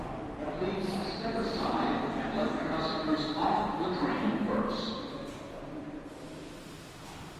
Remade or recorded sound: recorded